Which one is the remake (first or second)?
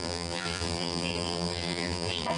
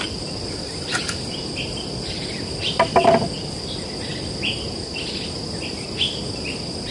first